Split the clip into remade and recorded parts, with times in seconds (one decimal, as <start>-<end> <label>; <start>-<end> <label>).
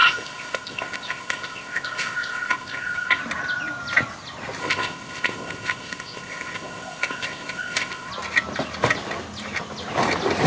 0.0-3.2 remade; 3.2-4.6 recorded; 4.6-8.1 remade; 8.1-10.5 recorded